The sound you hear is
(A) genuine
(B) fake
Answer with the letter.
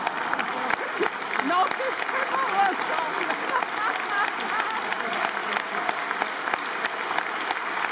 A